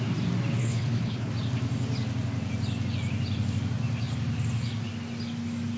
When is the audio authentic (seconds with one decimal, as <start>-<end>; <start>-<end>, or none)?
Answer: 0.0-0.6; 1.3-5.8